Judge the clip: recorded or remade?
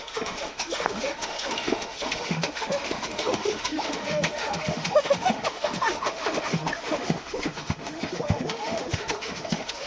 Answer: remade